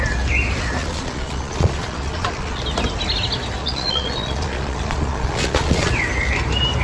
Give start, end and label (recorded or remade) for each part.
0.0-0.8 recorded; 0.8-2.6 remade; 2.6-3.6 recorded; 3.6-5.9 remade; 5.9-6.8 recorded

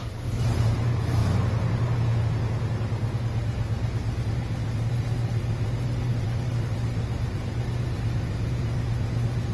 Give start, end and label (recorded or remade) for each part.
0.0-1.2 remade; 1.2-4.2 recorded; 4.2-9.5 remade

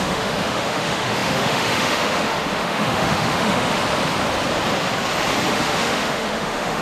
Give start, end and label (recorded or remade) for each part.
0.0-3.8 remade; 3.8-5.5 recorded; 5.5-6.8 remade